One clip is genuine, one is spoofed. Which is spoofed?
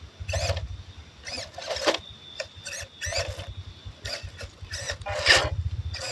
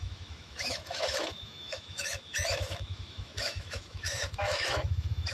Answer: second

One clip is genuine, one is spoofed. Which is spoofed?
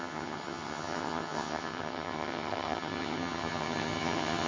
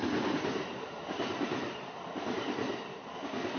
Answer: first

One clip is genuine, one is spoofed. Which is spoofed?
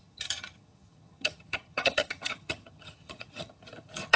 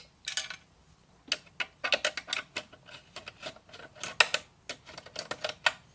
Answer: first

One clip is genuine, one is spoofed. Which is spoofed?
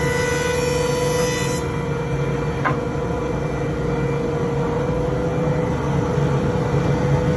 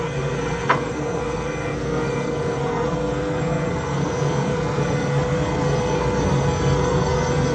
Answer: second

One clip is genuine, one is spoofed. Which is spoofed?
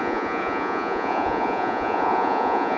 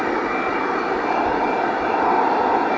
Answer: first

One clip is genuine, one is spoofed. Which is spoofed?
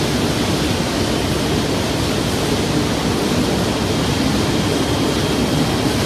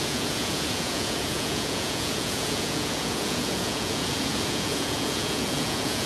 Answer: second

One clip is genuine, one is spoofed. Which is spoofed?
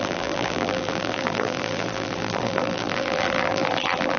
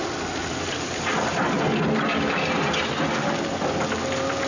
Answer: first